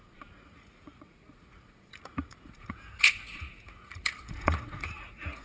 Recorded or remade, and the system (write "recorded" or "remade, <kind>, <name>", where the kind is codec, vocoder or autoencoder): remade, vocoder, Vocos